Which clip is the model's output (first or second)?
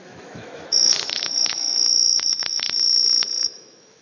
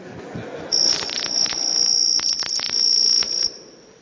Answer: first